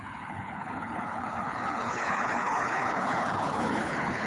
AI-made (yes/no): yes